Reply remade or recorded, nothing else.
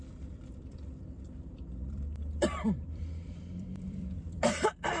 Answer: remade